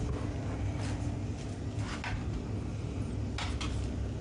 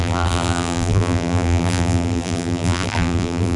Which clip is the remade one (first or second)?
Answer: second